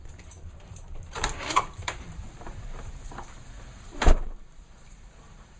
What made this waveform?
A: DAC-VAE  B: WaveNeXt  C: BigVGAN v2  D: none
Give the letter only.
C